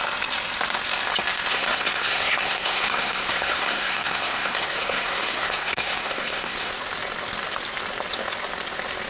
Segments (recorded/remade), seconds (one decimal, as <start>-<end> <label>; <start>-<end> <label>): 0.0-1.5 recorded; 1.5-6.7 remade; 6.7-9.1 recorded